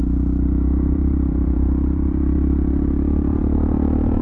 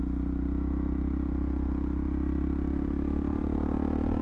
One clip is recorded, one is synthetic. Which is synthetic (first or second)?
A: first